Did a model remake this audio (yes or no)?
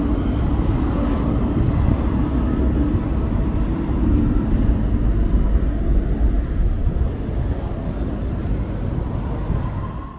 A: no